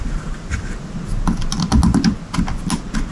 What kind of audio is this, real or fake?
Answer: real